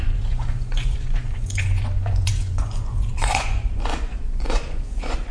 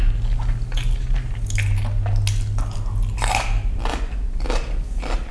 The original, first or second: second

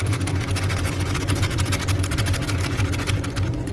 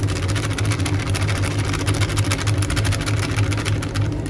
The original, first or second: second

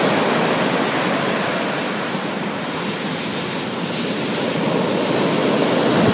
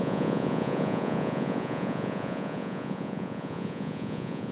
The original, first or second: first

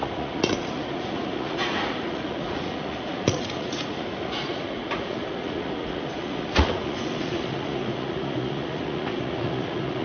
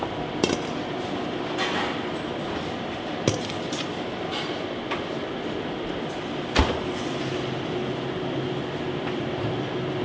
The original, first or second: second